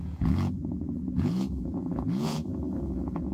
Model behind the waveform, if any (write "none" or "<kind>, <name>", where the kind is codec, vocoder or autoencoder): vocoder, Vocos